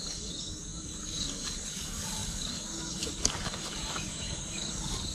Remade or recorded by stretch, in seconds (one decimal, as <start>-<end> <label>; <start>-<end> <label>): 0.0-5.1 remade